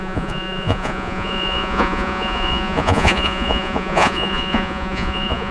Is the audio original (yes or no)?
no